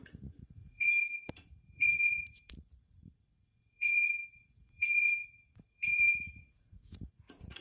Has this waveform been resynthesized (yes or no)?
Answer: yes